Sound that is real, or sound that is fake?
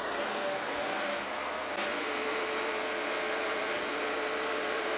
real